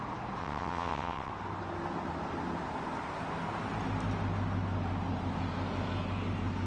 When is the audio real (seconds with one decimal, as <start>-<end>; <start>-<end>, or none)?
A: 0.0-0.4; 1.3-6.7